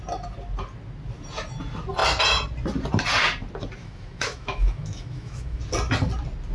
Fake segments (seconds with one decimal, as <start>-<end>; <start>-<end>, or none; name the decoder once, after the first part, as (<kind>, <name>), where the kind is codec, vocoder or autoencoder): 3.8-5.6 (autoencoder, DAC-VAE)